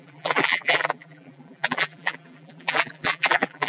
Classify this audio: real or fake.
fake